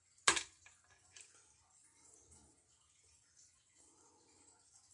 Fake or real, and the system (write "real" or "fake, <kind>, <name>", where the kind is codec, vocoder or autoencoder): real